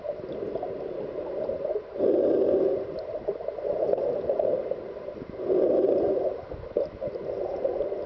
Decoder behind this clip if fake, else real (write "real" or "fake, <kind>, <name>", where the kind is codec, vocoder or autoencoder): real